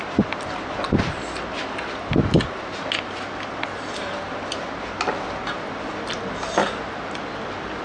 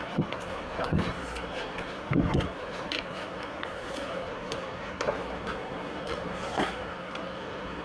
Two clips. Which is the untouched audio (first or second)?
first